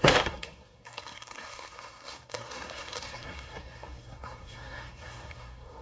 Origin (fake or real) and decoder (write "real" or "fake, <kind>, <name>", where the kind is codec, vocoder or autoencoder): fake, codec, SNAC